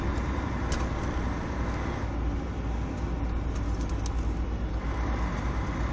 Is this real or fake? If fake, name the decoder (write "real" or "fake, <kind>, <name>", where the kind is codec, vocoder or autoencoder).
real